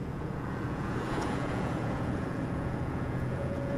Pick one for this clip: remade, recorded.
remade